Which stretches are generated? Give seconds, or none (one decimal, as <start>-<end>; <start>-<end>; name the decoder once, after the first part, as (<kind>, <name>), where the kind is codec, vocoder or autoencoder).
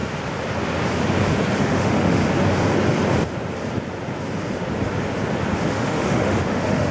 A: 1.6-2.2 (autoencoder, DAC-VAE); 5.7-6.9